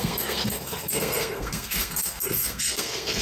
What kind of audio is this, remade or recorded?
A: remade